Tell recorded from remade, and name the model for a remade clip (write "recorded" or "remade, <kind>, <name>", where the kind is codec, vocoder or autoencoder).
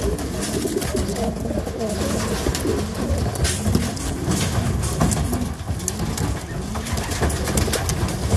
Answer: recorded